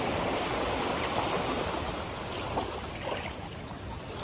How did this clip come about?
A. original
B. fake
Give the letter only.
A